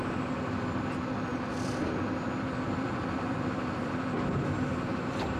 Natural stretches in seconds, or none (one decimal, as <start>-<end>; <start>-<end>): 0.0-1.3; 4.5-5.4